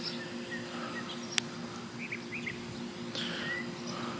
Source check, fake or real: real